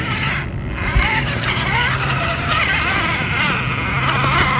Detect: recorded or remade recorded